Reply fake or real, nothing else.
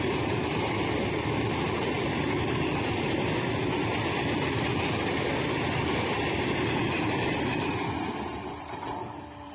fake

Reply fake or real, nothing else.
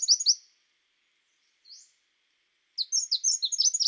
real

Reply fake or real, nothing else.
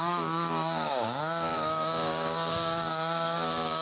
fake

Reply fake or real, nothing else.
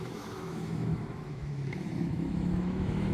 fake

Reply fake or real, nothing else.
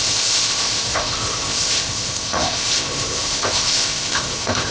fake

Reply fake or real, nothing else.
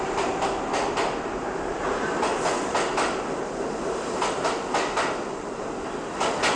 real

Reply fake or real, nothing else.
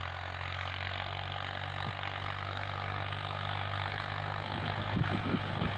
fake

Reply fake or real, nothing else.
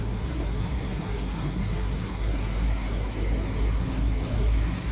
fake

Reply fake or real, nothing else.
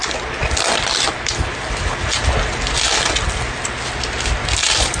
real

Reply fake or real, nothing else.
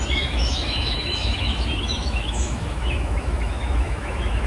fake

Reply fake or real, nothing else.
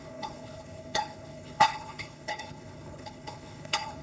fake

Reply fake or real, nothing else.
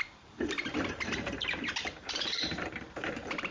fake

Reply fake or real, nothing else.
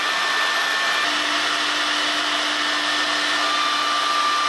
real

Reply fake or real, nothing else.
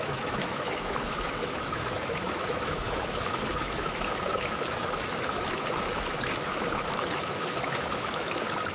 fake